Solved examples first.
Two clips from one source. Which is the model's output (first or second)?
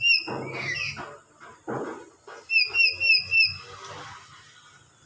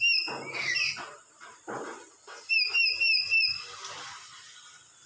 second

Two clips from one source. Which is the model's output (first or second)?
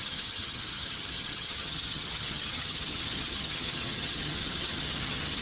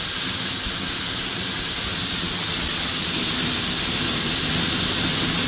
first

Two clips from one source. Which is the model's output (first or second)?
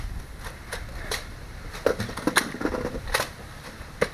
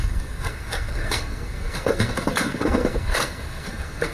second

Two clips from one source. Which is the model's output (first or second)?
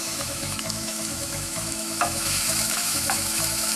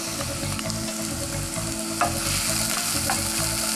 first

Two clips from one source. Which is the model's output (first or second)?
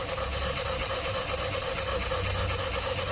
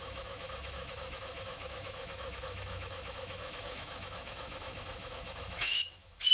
second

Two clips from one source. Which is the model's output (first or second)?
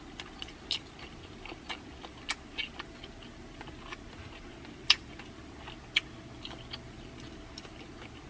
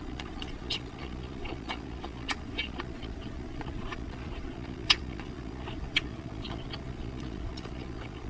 second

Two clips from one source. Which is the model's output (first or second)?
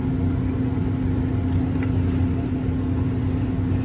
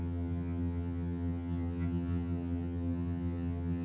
second